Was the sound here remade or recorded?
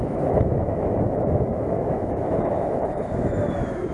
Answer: remade